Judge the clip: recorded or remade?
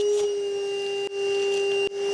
recorded